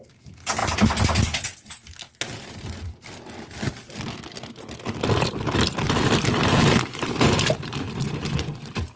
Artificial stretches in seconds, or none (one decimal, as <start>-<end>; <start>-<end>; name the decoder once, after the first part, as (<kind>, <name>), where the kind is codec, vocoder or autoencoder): none